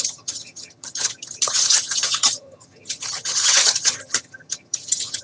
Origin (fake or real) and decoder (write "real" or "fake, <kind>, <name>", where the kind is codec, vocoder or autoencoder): fake, vocoder, HiFi-GAN